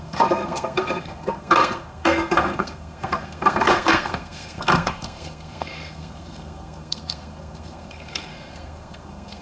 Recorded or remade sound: remade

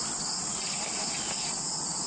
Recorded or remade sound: recorded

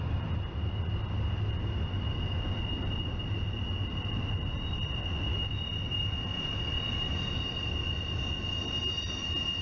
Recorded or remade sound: recorded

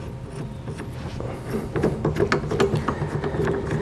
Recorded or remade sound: recorded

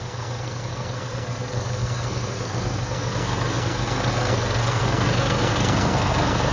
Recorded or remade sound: remade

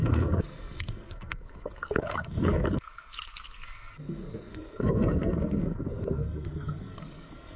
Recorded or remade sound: remade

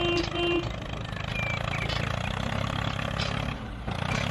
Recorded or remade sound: recorded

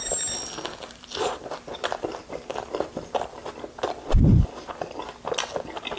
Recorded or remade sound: recorded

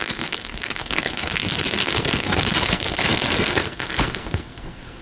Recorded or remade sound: remade